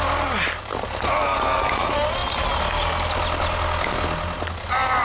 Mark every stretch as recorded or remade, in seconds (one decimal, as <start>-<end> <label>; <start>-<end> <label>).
0.0-5.0 recorded